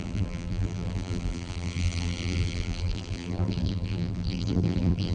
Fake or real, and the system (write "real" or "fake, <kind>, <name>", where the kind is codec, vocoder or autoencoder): fake, vocoder, BigVGAN v2